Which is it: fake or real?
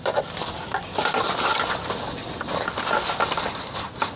real